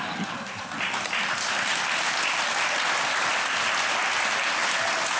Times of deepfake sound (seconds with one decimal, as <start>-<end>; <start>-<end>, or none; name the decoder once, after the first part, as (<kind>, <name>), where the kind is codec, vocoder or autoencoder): none